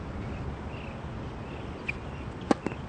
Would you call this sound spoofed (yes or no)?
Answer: no